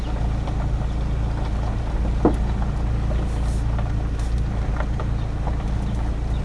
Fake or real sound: real